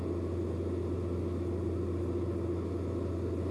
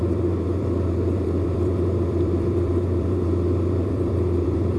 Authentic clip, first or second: first